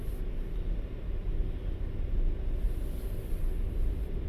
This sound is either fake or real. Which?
real